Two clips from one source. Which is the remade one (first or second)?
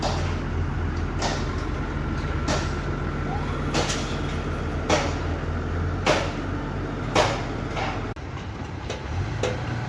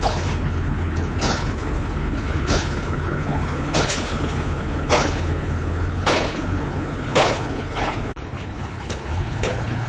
second